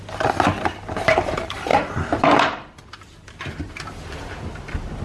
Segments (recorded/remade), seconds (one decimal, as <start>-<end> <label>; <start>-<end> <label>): 0.0-5.0 remade